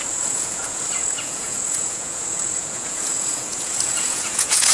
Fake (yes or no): yes